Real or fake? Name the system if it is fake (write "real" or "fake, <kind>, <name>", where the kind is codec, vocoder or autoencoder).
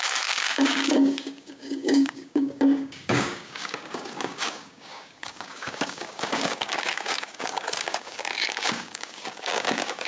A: fake, codec, DAC